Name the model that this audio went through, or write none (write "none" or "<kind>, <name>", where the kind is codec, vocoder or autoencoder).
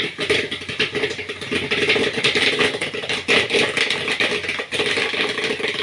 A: none